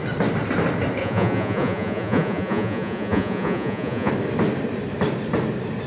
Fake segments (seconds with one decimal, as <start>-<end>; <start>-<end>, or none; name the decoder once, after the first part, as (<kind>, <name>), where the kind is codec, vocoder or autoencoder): 1.0-4.1 (vocoder, Vocos)